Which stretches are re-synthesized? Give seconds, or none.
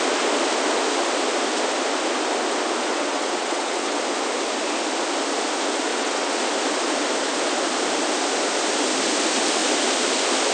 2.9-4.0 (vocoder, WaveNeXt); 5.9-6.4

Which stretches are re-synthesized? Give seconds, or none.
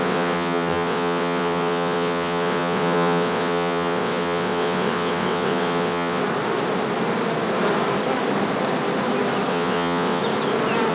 0.0-6.2 (vocoder, WaveNeXt); 9.5-10.2